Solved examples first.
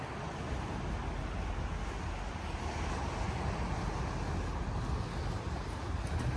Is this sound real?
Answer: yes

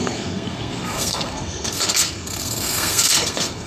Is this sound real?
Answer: no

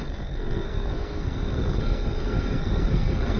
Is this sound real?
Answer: no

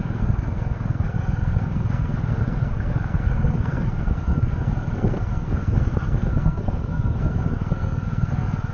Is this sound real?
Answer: no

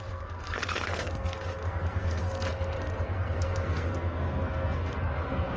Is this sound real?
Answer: no